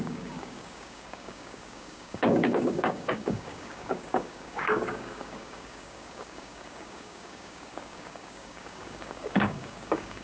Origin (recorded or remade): remade